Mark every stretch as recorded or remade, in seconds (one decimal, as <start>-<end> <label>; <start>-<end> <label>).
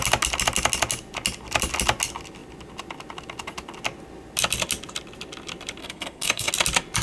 0.0-5.8 recorded; 5.8-6.5 remade; 6.5-7.0 recorded